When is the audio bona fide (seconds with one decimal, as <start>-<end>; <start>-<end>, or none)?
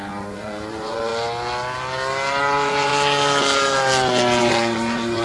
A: 1.1-2.4; 2.9-4.4